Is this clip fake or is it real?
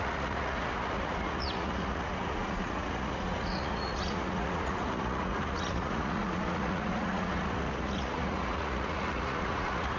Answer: fake